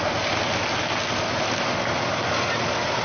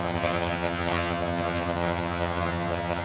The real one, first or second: first